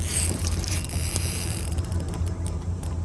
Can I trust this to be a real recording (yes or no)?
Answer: no